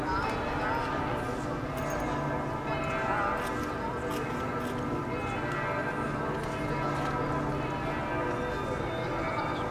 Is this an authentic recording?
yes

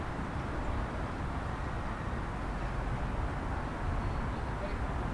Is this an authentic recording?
yes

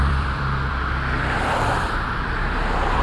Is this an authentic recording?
no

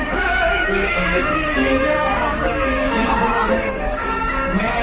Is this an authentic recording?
no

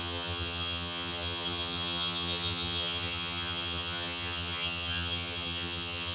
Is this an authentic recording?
no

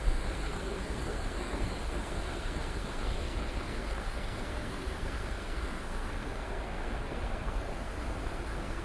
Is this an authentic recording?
no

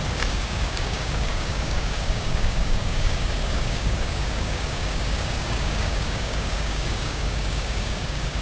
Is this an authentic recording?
no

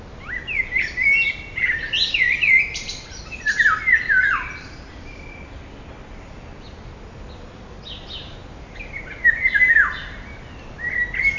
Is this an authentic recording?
yes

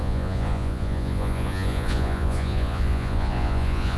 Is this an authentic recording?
no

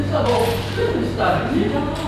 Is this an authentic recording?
yes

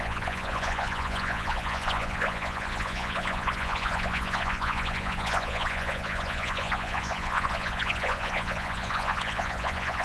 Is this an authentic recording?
no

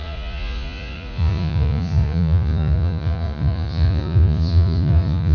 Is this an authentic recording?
no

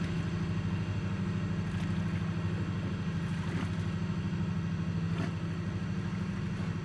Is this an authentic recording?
yes